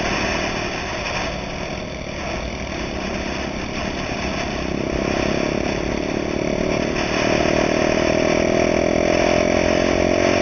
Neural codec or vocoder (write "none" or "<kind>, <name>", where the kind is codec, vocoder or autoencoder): none